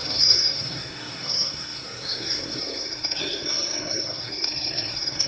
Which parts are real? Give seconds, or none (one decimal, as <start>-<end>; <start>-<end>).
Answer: none